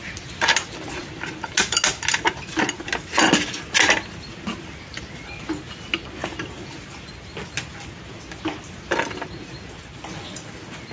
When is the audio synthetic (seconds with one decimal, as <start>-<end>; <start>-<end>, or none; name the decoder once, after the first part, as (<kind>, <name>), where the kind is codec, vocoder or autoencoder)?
none